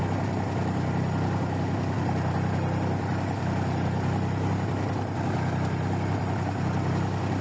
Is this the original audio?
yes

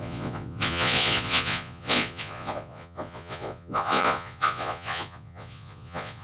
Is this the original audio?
no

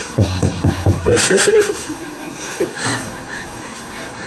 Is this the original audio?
no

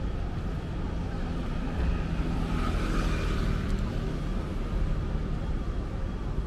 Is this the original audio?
yes